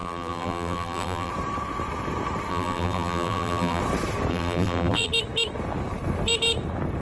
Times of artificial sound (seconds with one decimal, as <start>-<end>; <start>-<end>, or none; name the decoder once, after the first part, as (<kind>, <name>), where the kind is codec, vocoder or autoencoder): 0.0-1.3 (vocoder, BigVGAN v2); 2.5-3.8; 4.3-5.1